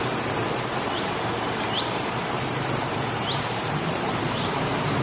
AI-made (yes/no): yes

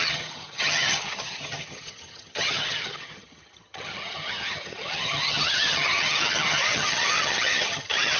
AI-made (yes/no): yes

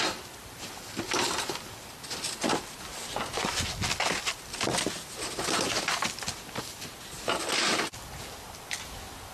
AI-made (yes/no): no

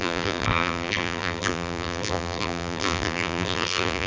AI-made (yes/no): yes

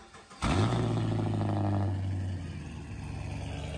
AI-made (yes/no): no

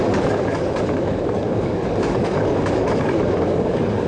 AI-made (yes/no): yes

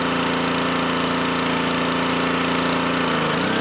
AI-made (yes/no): no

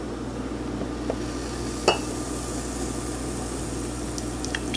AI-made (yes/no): no